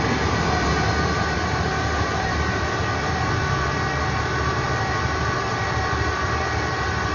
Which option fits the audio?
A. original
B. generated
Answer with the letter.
B